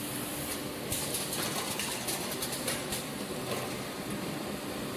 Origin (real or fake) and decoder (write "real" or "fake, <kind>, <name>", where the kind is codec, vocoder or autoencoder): real